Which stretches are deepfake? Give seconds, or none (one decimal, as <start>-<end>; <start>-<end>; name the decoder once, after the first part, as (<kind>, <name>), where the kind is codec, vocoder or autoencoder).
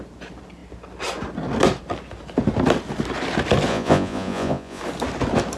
3.7-4.8 (vocoder, Vocos)